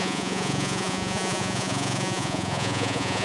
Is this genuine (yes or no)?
no